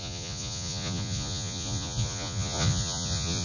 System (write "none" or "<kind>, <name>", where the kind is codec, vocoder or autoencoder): vocoder, Vocos